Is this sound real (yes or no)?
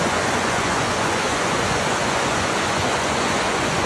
no